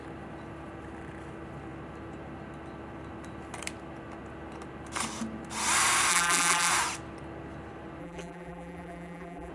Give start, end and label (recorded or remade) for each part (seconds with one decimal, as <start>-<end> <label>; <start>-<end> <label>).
0.0-6.1 recorded; 6.1-6.7 remade; 6.7-8.0 recorded; 8.0-9.5 remade